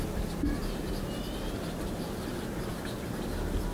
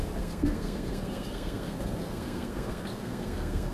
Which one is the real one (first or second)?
first